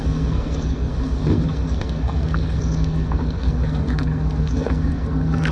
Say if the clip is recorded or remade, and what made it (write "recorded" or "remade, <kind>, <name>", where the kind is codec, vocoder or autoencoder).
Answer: remade, codec, SNAC